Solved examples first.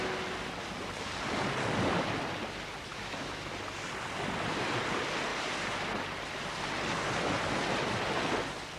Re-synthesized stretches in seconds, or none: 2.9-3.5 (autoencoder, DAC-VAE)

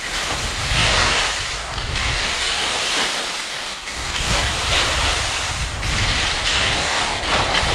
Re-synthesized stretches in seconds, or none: 0.6-1.2 (codec, DAC); 1.6-2.8; 3.5-4.5; 6.5-7.2

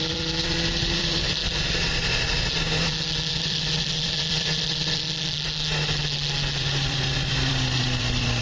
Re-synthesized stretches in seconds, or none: 0.0-1.4 (vocoder, BigVGAN v2); 3.3-5.0; 6.6-8.4

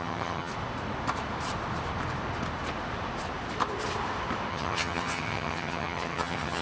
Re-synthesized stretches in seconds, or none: 0.0-0.5 (vocoder, HiFi-GAN); 4.5-6.6

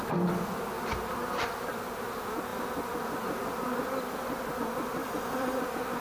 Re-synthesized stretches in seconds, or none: 5.0-5.6 (vocoder, BigVGAN v2)